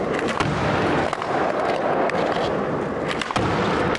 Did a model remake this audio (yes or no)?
no